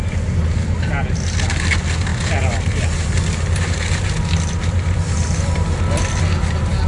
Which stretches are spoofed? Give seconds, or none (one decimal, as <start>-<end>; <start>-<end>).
none